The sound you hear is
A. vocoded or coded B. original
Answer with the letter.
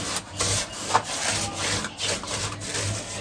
B